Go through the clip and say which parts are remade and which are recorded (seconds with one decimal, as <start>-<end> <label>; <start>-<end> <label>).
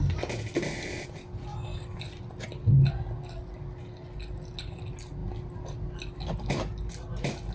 0.0-7.5 recorded